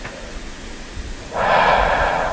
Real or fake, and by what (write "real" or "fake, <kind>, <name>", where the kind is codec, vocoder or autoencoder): fake, vocoder, Vocos